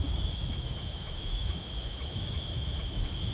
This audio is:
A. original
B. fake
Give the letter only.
B